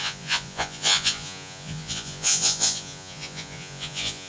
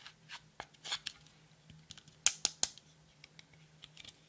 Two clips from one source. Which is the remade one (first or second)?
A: first